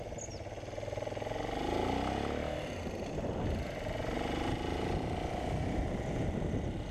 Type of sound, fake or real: real